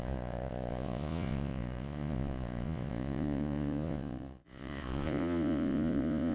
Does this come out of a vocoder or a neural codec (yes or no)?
yes